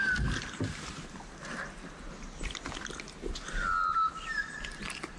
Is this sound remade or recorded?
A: recorded